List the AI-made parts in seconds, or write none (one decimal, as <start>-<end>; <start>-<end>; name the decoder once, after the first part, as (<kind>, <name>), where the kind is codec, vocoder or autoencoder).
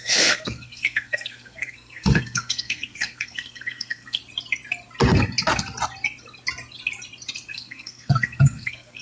0.0-4.2 (codec, SNAC); 7.5-9.0